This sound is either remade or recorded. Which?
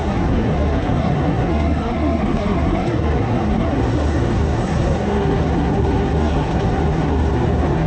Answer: remade